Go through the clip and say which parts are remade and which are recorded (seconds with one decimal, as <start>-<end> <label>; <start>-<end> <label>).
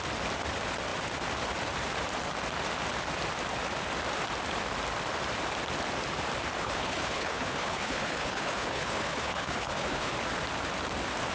0.0-6.6 recorded; 6.6-10.1 remade; 10.1-11.3 recorded